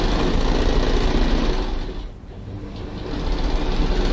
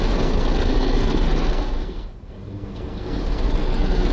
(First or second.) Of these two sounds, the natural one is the first